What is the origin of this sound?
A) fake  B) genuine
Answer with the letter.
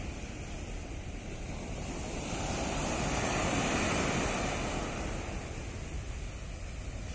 B